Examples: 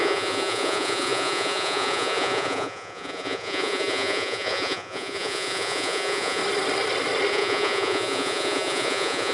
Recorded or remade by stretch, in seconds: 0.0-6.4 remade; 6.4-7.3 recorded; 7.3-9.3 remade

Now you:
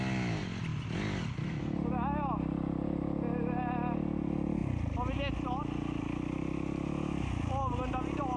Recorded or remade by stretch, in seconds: 0.0-8.4 recorded

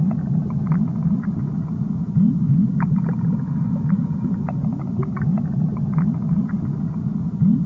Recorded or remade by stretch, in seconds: 0.0-7.7 recorded

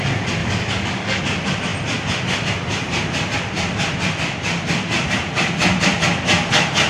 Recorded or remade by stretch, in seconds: 0.0-0.4 recorded; 0.4-1.2 remade; 1.2-6.9 recorded

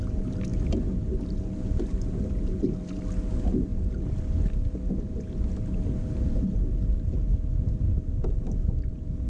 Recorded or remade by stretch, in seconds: 0.0-9.3 recorded

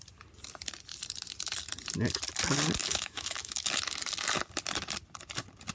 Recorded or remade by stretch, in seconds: 0.0-2.8 recorded; 2.8-3.7 remade; 3.7-5.7 recorded